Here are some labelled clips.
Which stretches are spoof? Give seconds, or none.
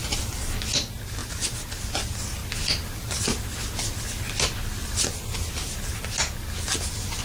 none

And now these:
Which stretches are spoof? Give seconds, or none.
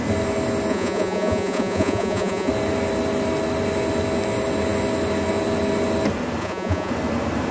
0.7-2.5 (vocoder, Vocos); 6.4-6.9